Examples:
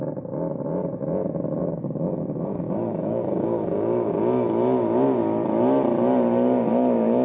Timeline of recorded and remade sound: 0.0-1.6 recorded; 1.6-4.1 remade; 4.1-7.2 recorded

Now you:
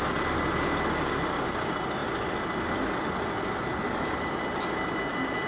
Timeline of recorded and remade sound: 0.0-5.5 recorded

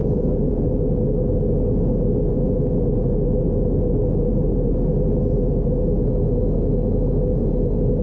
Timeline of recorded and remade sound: 0.0-0.5 remade; 0.5-8.0 recorded

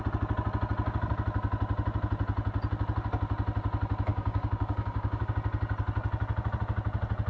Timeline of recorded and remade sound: 0.0-4.1 recorded; 4.1-5.3 remade; 5.3-7.3 recorded

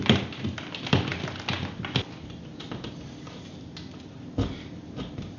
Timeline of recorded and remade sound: 0.0-5.4 recorded